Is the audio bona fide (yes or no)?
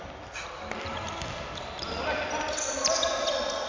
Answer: yes